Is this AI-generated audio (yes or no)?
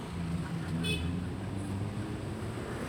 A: yes